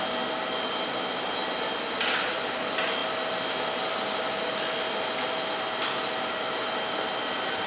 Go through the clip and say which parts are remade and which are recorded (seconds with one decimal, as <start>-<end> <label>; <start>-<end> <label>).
0.0-7.7 recorded